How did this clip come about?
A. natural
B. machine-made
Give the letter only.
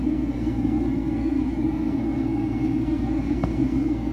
B